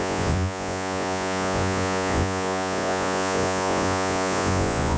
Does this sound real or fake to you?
fake